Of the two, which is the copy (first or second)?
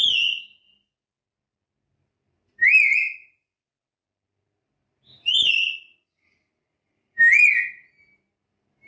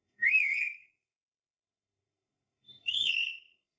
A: second